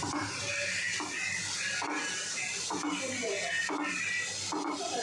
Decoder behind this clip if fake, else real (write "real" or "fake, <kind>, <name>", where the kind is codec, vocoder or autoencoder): real